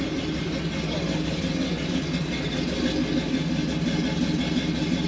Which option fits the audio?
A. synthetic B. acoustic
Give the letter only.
B